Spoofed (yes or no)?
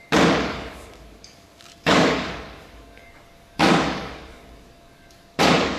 yes